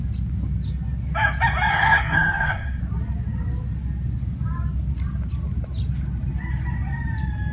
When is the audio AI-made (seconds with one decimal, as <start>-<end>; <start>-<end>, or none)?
1.7-2.8